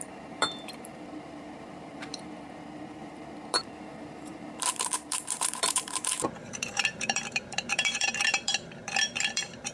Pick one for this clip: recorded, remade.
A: remade